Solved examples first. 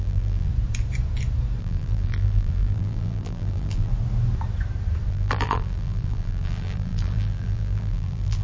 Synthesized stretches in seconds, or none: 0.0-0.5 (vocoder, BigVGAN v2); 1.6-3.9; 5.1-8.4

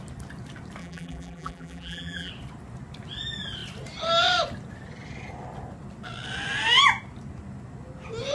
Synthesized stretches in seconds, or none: 0.8-2.3 (vocoder, BigVGAN v2)

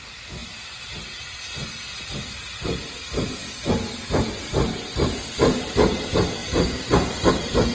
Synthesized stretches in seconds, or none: 6.4-7.3 (vocoder, BigVGAN v2)

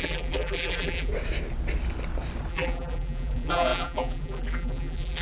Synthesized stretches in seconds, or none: 0.0-1.1 (vocoder, BigVGAN v2); 2.5-5.2

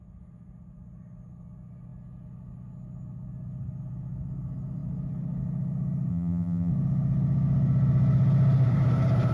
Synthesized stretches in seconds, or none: 6.1-6.7 (vocoder, BigVGAN v2)